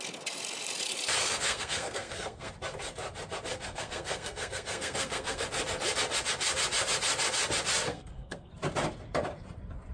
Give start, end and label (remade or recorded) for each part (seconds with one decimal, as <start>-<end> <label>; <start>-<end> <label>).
0.0-1.2 recorded; 1.2-2.5 remade; 2.5-3.5 recorded; 3.5-5.4 remade; 5.4-7.9 recorded; 7.9-8.5 remade; 8.5-9.9 recorded